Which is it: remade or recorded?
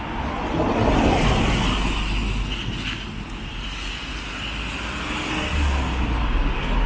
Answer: recorded